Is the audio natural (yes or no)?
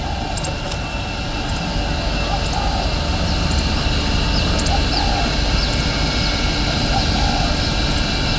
yes